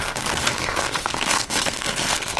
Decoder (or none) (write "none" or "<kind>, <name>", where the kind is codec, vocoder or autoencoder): codec, SNAC